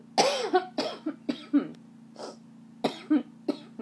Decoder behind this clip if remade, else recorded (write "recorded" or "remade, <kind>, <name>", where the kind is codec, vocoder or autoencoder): recorded